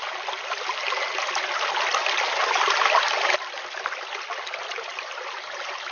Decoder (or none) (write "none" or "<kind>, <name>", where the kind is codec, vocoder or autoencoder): none